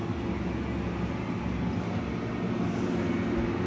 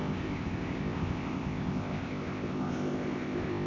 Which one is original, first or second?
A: first